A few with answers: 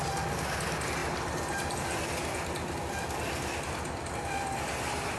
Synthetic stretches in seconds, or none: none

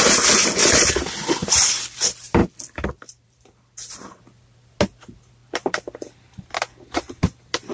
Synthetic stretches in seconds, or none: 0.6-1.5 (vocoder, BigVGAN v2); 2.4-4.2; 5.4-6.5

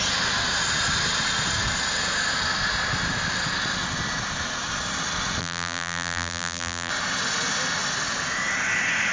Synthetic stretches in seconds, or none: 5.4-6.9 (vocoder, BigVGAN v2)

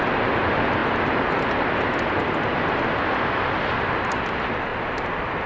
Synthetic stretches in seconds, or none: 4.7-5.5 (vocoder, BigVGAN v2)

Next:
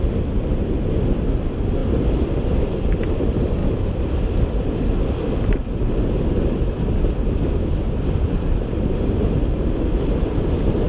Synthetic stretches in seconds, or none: 1.8-2.9 (vocoder, BigVGAN v2); 3.6-5.6

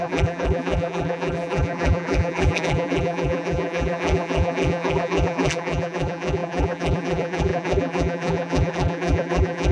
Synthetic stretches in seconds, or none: 0.0-9.7 (vocoder, BigVGAN v2)

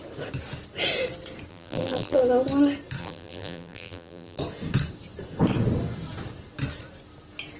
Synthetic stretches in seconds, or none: 1.5-2.2 (vocoder, BigVGAN v2); 3.0-4.4

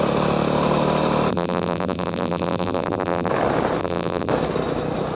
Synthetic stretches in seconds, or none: 1.3-3.3 (vocoder, BigVGAN v2); 3.8-4.3